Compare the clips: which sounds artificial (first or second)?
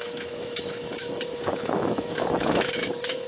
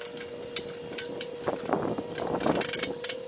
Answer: first